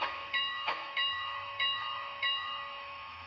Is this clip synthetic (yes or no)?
yes